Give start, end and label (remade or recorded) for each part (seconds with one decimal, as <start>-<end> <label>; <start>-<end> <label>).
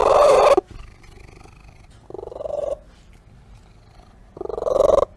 0.0-5.2 recorded